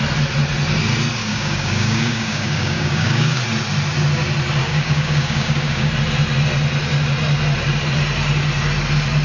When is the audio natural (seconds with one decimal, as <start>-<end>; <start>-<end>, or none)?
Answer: 0.0-1.2; 3.4-4.6; 5.9-9.2